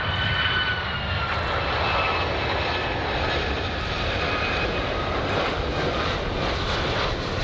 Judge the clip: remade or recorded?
recorded